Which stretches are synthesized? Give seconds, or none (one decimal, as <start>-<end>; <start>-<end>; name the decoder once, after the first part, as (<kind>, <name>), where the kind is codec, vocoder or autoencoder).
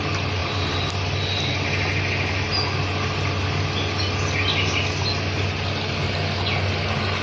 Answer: 0.4-0.9 (vocoder, BigVGAN v2)